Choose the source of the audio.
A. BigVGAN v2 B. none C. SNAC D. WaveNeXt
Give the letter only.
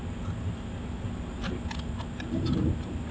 B